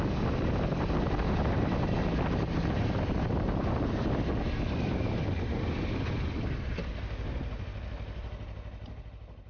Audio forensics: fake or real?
real